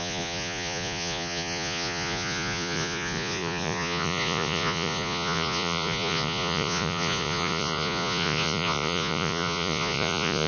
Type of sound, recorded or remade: remade